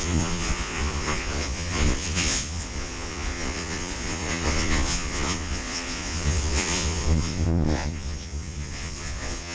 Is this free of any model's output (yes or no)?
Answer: no